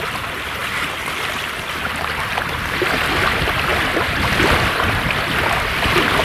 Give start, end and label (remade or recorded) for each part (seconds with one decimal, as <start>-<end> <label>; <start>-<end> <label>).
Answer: 0.0-0.6 remade; 0.6-2.5 recorded; 2.5-3.7 remade; 3.7-4.5 recorded; 4.5-6.2 remade